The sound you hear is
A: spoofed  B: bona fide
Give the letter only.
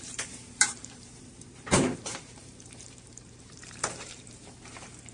A